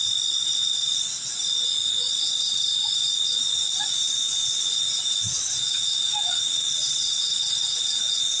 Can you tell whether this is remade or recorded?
recorded